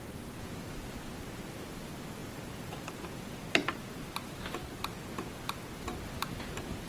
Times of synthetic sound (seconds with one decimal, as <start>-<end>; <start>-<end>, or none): 3.6-4.8